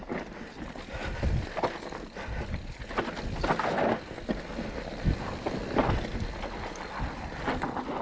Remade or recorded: recorded